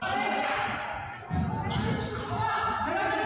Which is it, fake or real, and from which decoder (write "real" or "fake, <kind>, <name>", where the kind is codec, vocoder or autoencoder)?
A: real